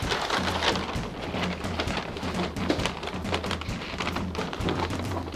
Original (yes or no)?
yes